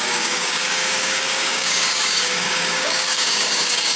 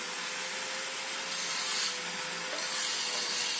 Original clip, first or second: second